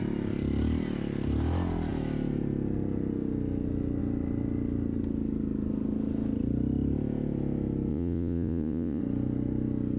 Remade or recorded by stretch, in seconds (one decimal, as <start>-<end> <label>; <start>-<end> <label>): 0.0-7.9 recorded; 7.9-9.0 remade; 9.0-10.0 recorded